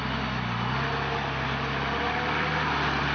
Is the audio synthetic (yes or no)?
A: no